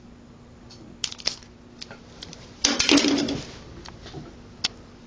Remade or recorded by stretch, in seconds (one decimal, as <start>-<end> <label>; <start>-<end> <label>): 0.0-5.1 recorded